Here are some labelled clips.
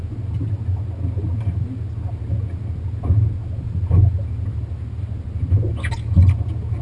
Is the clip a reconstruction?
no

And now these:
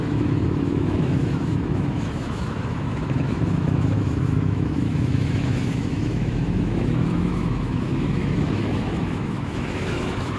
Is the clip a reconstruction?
yes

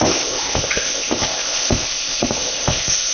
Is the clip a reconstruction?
yes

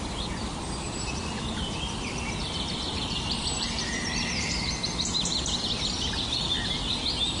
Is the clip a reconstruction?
yes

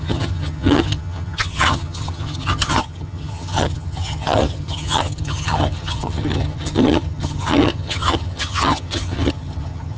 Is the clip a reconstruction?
yes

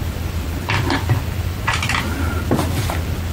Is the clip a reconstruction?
no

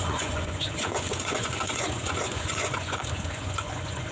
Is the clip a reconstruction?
yes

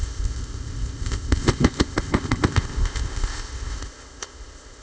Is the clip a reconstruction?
yes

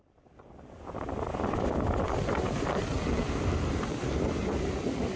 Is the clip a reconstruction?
no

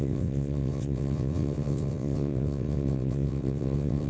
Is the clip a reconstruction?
yes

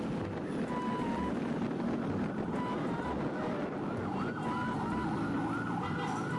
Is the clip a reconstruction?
no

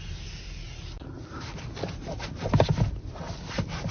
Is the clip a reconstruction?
no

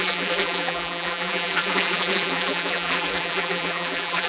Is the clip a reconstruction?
yes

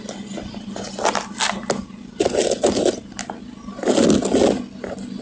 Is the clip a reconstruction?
no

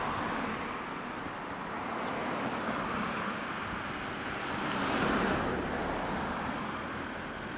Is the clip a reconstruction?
no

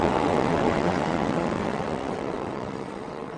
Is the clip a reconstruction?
yes